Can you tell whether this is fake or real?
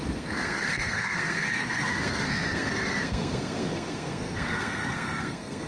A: fake